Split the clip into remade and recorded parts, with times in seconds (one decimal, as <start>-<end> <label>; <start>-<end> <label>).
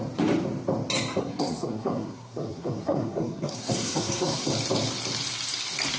0.0-1.2 recorded; 1.2-4.5 remade; 4.5-6.0 recorded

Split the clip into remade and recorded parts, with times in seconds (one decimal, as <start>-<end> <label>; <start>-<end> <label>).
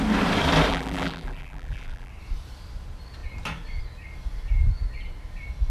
0.0-0.7 recorded; 0.7-2.1 remade; 2.1-5.7 recorded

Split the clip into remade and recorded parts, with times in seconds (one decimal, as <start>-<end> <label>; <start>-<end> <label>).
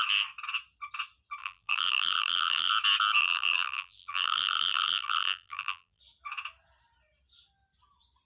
0.0-1.4 recorded; 1.4-2.7 remade; 2.7-3.2 recorded; 3.2-6.0 remade; 6.0-8.3 recorded